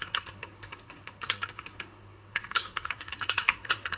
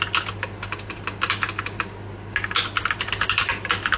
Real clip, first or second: second